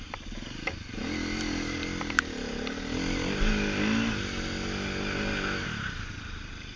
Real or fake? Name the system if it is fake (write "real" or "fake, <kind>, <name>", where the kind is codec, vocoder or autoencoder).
real